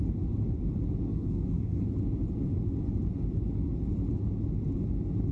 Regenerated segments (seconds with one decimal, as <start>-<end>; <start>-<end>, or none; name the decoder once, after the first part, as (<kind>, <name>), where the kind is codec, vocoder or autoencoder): 1.1-1.9 (codec, SNAC)